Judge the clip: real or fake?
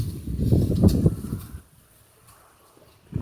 real